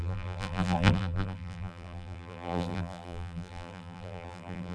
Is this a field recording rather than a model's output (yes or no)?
no